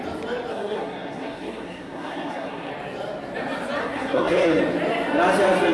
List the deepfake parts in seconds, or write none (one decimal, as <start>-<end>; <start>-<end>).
0.5-2.7; 3.8-4.6